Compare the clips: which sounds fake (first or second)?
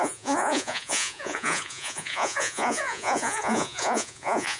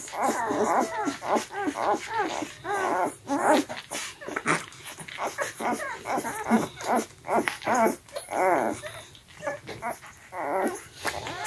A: first